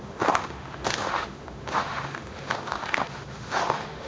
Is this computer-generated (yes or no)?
yes